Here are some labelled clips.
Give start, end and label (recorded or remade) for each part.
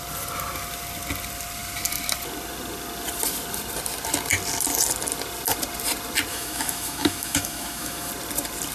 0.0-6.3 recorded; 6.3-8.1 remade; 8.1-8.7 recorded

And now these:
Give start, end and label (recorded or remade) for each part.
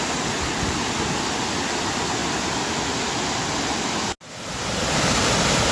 0.0-5.7 recorded